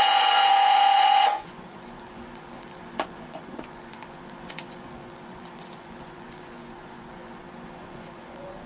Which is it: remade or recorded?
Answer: remade